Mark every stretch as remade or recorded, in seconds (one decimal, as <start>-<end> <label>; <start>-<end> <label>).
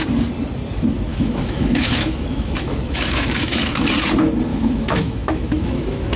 0.0-1.1 recorded; 1.1-3.9 remade; 3.9-4.5 recorded; 4.5-6.2 remade